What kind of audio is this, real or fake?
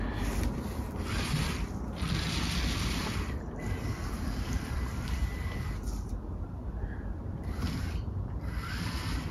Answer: fake